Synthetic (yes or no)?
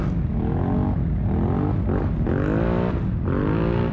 no